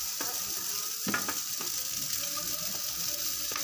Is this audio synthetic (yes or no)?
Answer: no